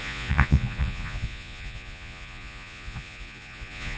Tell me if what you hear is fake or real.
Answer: fake